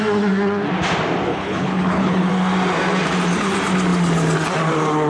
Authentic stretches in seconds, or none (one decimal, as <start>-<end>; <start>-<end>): 0.0-1.3; 2.3-5.1

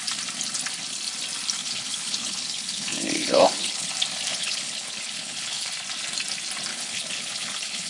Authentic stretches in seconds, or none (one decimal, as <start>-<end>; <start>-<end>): 0.0-1.6; 3.9-4.3; 5.7-6.7

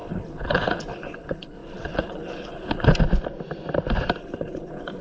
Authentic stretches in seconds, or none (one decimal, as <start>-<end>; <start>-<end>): 2.9-4.2

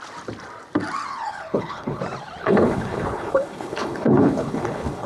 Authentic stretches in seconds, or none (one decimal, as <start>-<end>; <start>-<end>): 0.0-1.1; 2.0-2.4

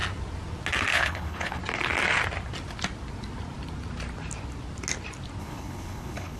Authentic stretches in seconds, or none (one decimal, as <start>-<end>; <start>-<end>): 0.0-0.9; 1.6-5.4

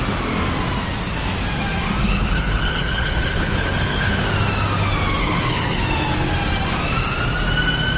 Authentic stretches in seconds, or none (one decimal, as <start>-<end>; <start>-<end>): 0.0-2.0; 4.2-5.2; 5.8-8.0

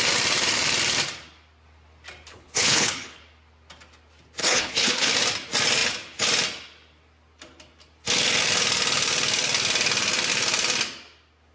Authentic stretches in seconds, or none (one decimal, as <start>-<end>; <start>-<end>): 0.0-2.3; 3.2-4.4; 5.1-11.5